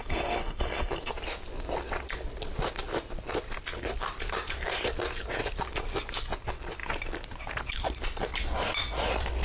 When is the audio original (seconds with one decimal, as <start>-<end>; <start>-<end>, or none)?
1.1-9.4